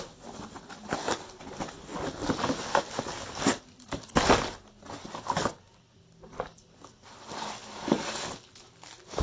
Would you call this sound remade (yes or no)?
no